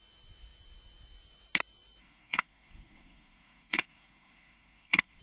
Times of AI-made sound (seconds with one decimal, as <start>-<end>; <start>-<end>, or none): 2.0-5.2